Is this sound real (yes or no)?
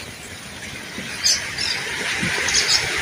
yes